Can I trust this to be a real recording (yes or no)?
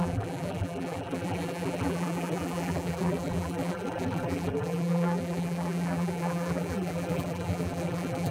no